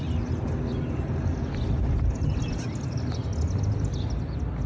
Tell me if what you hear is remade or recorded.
recorded